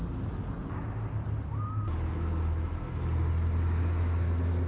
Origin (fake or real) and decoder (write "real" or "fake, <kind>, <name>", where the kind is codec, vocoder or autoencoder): real